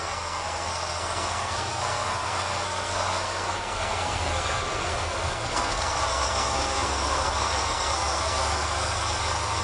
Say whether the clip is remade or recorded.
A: remade